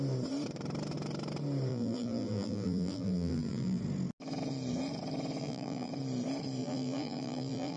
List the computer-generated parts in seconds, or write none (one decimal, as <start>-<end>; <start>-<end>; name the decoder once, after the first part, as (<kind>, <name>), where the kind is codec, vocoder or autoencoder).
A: 1.7-3.8 (vocoder, BigVGAN v2); 5.4-5.9; 6.6-7.8